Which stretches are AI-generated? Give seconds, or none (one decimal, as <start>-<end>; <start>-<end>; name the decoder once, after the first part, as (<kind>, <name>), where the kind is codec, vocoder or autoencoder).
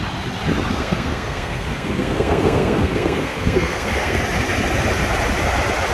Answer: 0.7-4.2 (codec, SNAC)